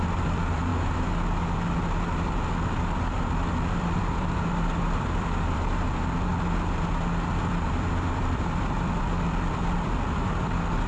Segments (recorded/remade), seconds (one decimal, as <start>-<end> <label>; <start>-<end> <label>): 0.0-0.7 remade; 0.7-3.7 recorded; 3.7-6.3 remade; 6.3-7.4 recorded; 7.4-10.9 remade